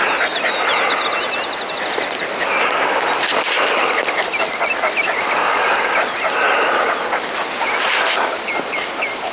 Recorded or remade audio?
recorded